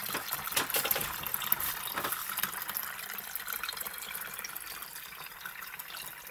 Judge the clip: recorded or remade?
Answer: recorded